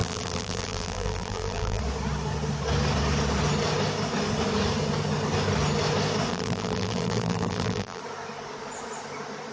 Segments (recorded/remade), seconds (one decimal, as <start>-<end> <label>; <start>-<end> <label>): 0.0-1.8 remade; 1.8-6.3 recorded; 6.3-8.0 remade; 8.0-9.5 recorded